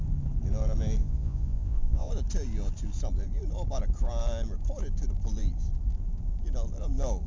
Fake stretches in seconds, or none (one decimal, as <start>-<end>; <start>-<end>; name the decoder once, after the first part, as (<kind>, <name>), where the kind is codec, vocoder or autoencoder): 1.0-2.1 (vocoder, Vocos)